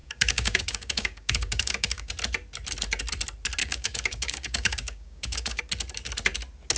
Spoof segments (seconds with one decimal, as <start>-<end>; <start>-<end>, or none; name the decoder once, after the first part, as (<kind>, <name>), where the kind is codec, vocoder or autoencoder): 0.0-2.1 (codec, DAC); 3.6-5.6